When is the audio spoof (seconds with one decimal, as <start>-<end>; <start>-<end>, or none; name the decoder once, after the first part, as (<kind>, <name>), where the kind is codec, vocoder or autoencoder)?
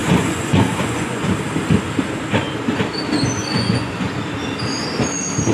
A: 0.0-1.3 (vocoder, Vocos); 3.4-4.1